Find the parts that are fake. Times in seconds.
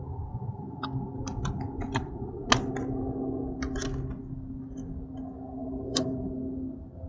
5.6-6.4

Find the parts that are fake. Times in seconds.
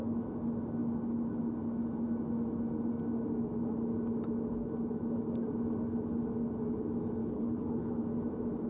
7.2-7.9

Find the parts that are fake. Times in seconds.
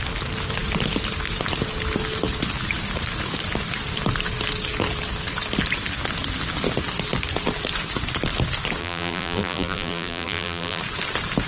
8.8-10.8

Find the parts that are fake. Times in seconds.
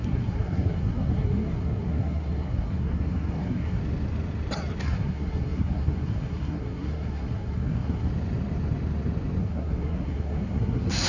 0.0-3.8; 4.8-8.1; 9.4-11.1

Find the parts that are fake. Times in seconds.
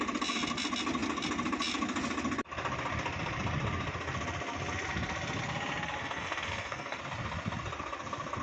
6.0-7.0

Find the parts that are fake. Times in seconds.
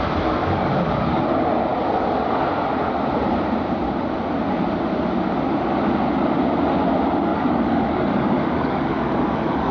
0.4-1.2; 7.3-9.7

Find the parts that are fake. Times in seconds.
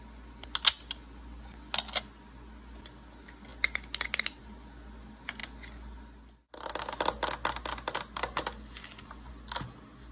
none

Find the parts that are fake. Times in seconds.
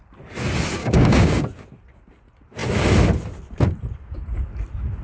0.8-1.4